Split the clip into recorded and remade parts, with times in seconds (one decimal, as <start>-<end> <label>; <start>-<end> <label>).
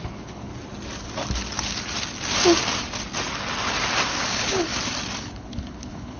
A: 0.0-0.5 remade; 0.5-4.2 recorded; 4.2-4.7 remade; 4.7-5.2 recorded; 5.2-6.2 remade